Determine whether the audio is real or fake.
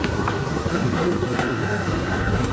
fake